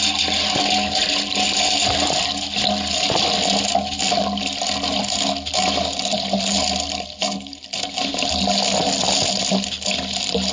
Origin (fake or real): real